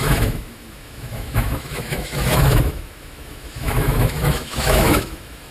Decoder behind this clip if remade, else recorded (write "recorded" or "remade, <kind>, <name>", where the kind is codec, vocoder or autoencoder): remade, autoencoder, DAC-VAE